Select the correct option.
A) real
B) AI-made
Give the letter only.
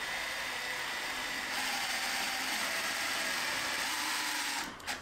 A